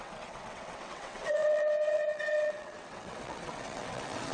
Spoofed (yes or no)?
yes